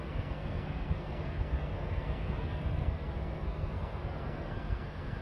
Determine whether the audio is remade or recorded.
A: remade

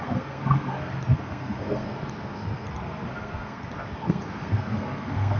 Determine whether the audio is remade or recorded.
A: remade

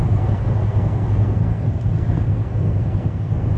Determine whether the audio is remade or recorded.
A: remade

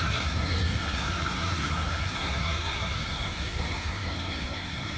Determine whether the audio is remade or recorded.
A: remade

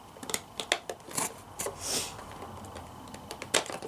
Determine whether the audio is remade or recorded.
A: recorded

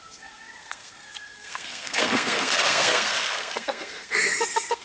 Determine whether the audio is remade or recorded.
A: remade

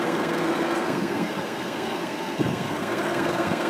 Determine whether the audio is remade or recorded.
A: remade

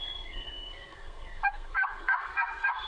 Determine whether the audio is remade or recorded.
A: remade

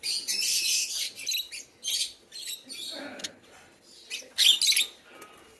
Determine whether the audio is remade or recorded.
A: recorded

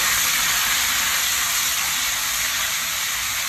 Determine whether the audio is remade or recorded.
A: recorded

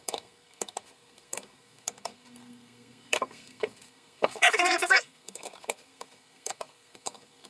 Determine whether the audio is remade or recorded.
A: remade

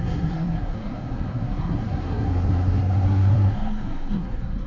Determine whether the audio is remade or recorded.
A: remade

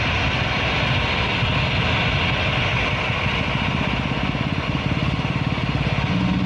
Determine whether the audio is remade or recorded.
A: recorded